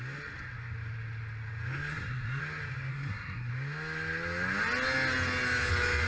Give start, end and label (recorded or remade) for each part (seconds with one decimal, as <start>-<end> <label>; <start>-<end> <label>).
0.0-1.9 recorded; 1.9-2.4 remade; 2.4-2.9 recorded; 2.9-3.5 remade; 3.5-6.1 recorded